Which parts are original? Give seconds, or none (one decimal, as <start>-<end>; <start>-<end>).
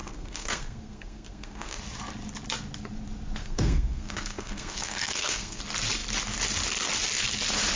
1.8-3.4; 5.6-7.8